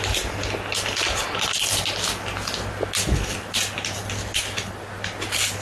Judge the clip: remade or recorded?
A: recorded